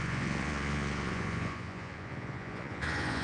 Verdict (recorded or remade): remade